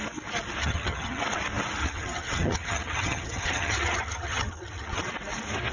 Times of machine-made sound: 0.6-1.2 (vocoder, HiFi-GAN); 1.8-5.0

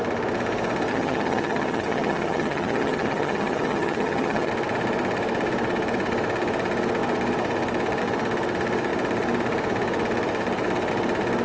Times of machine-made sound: 0.9-4.5 (vocoder, HiFi-GAN)

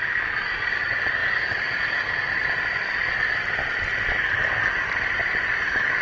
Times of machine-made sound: none

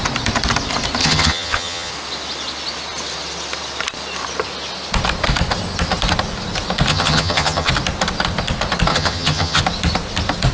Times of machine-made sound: 1.0-1.9 (vocoder, HiFi-GAN); 6.9-7.7; 8.9-9.6